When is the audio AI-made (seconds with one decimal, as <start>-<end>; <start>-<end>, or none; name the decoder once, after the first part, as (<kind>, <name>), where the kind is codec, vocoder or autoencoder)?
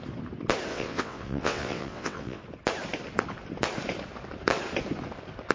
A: 0.7-2.4 (vocoder, WaveNeXt)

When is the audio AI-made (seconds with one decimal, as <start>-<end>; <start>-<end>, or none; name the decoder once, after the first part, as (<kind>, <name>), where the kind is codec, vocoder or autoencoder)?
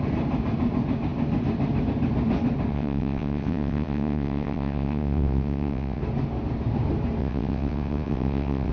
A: 2.7-6.0 (vocoder, WaveNeXt); 7.2-8.7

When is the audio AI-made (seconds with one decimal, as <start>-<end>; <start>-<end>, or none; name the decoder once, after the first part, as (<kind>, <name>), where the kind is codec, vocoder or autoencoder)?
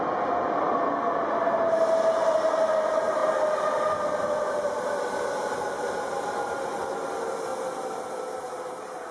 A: none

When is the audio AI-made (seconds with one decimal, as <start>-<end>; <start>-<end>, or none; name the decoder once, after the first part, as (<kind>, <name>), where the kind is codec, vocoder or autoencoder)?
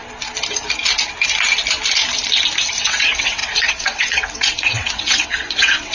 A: 2.8-5.9 (vocoder, WaveNeXt)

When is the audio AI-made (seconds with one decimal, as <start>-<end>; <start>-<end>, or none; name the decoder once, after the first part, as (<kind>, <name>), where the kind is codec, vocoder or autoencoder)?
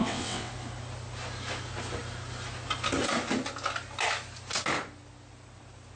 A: 0.0-0.5 (vocoder, WaveNeXt)